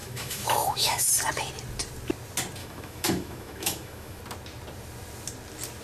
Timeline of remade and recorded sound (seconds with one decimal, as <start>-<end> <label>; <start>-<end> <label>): 0.0-1.1 remade; 1.1-2.6 recorded; 2.6-4.2 remade; 4.2-5.8 recorded